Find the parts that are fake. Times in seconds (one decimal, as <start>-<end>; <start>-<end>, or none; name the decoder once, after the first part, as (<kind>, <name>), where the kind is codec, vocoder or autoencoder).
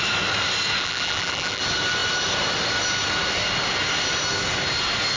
0.8-1.6 (vocoder, BigVGAN v2)